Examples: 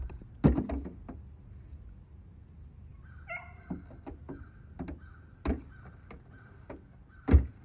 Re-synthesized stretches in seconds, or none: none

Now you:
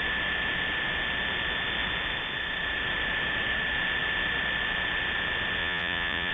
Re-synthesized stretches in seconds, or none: 5.6-6.3 (vocoder, Vocos)

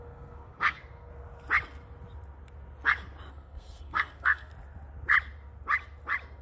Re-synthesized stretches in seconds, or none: 0.0-1.1 (codec, SNAC); 3.3-4.5

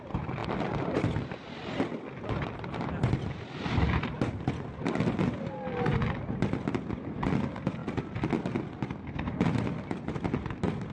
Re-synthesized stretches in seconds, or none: none

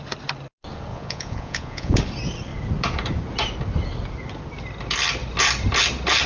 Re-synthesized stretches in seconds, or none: 0.9-2.0 (vocoder, Vocos)